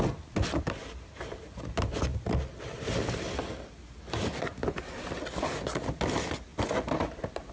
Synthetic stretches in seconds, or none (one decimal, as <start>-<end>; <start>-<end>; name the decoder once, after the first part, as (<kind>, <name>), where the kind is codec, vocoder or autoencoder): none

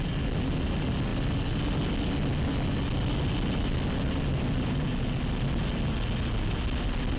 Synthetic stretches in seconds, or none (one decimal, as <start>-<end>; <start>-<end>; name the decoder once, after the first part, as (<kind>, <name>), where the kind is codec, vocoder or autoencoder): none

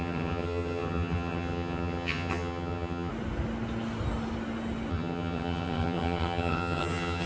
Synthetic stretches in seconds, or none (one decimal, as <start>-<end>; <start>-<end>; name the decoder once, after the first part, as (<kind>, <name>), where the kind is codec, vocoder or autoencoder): 0.0-3.1 (vocoder, HiFi-GAN); 4.9-7.3

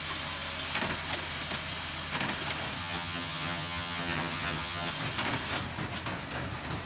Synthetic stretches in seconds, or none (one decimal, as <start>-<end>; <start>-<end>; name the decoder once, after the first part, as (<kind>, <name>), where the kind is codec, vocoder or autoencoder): 2.8-4.9 (vocoder, HiFi-GAN)

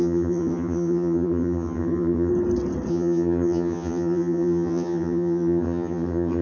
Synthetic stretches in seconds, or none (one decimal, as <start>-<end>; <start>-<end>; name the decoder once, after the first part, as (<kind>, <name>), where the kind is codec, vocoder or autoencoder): 0.0-2.3 (vocoder, HiFi-GAN); 2.9-6.4